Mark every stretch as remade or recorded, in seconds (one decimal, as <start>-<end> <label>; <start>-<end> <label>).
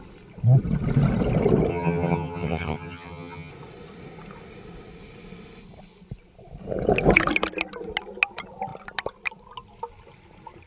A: 0.0-1.7 recorded; 1.7-3.5 remade; 3.5-10.7 recorded